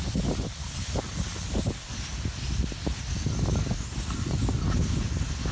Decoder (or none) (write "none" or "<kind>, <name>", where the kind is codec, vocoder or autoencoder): none